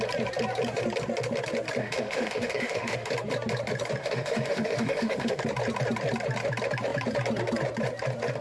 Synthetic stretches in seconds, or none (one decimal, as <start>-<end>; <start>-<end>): 1.8-3.1; 4.0-5.4